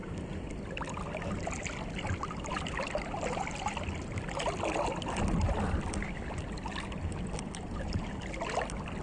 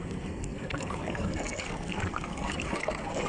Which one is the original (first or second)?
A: first